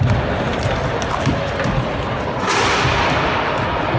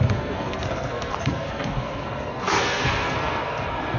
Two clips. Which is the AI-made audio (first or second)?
second